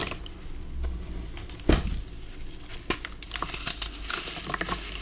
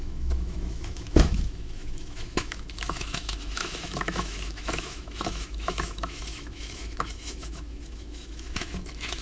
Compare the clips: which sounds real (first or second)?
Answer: first